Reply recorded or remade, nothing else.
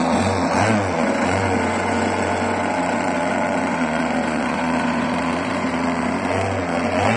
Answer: remade